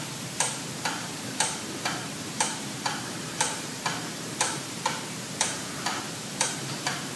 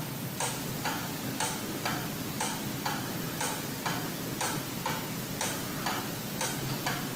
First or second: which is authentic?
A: second